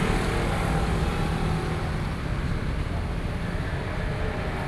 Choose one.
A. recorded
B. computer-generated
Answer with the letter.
A